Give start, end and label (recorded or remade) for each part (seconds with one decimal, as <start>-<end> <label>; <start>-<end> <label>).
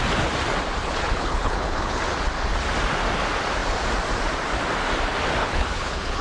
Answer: 0.0-0.8 recorded; 0.8-2.0 remade; 2.0-5.4 recorded; 5.4-6.2 remade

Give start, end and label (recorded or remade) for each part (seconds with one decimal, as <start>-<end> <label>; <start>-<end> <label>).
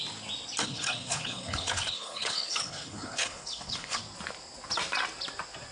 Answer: 0.0-0.6 recorded; 0.6-4.0 remade; 4.0-5.7 recorded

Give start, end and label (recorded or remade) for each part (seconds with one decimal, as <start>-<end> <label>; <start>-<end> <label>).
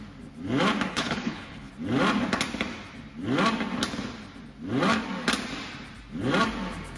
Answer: 0.0-0.9 recorded; 0.9-1.7 remade; 1.7-7.0 recorded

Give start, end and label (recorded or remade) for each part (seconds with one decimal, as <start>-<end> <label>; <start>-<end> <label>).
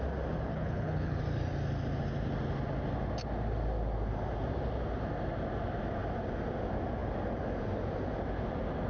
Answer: 0.0-0.5 recorded; 0.5-1.2 remade; 1.2-8.9 recorded